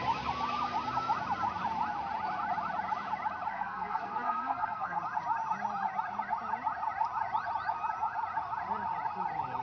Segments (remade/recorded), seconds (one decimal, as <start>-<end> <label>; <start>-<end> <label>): 0.0-3.5 recorded; 3.5-5.0 remade; 5.0-9.6 recorded